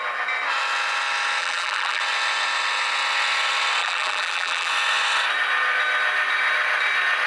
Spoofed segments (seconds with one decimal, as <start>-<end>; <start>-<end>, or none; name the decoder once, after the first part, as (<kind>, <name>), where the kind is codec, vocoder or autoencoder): 1.4-2.0 (vocoder, BigVGAN v2); 3.8-4.7